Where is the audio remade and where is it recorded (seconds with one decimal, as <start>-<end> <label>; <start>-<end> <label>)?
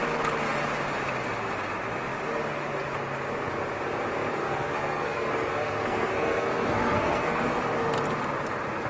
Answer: 0.0-4.4 recorded; 4.4-7.6 remade; 7.6-8.9 recorded